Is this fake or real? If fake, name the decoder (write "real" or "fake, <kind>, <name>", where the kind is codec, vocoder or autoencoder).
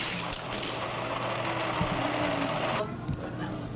real